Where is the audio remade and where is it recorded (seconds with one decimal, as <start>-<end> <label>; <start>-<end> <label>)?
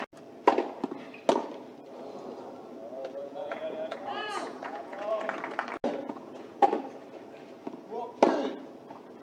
0.0-3.2 recorded; 3.2-5.2 remade; 5.2-6.0 recorded; 6.0-6.7 remade; 6.7-9.2 recorded